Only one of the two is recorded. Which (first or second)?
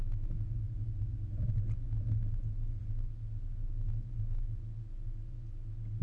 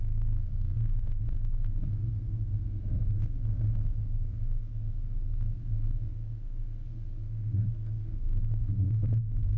first